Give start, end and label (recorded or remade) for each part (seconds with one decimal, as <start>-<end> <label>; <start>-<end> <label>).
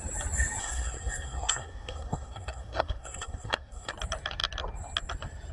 0.0-0.6 recorded; 0.6-3.9 remade; 3.9-5.5 recorded